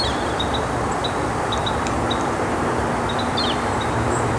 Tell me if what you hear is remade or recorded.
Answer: remade